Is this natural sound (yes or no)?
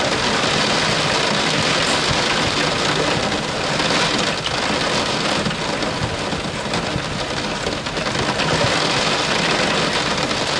yes